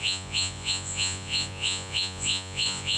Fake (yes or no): yes